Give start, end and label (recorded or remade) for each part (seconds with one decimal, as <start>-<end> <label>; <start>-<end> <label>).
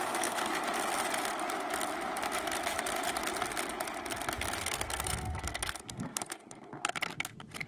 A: 0.0-0.5 remade; 0.5-4.6 recorded; 4.6-7.7 remade